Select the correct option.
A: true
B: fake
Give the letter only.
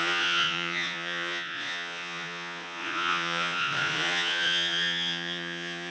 B